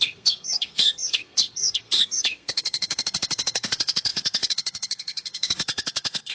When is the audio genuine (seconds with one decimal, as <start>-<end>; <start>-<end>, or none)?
none